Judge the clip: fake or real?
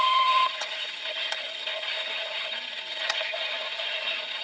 fake